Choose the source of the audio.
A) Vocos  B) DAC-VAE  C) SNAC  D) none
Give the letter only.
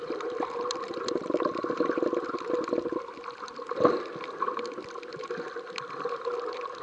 D